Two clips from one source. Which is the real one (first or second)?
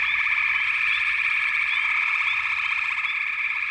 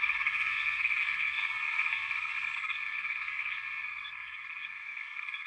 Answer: first